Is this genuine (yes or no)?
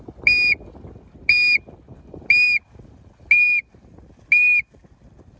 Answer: yes